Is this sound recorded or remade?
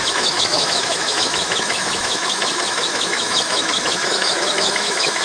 remade